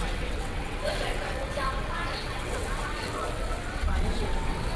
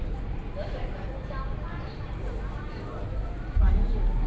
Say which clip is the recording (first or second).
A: second